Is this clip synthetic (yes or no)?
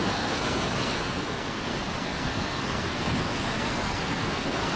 yes